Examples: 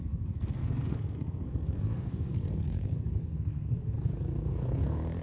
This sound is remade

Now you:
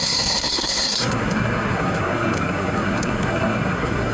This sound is remade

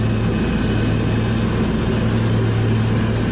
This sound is recorded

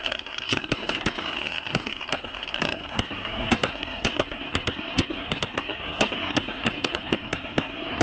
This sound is remade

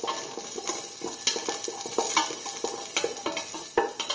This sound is recorded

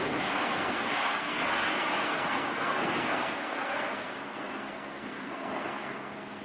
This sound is remade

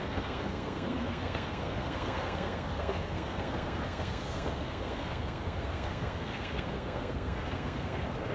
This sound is remade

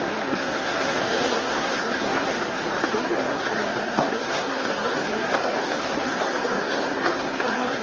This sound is remade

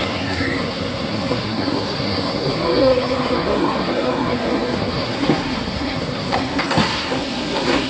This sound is remade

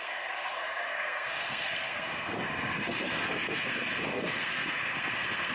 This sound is remade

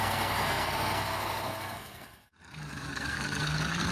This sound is remade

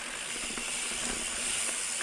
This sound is recorded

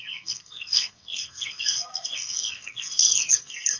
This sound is remade